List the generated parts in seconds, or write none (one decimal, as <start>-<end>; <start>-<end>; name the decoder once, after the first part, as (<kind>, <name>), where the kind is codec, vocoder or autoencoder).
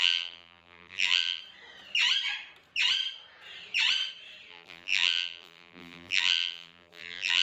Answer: 0.0-1.4 (vocoder, BigVGAN v2); 4.5-7.4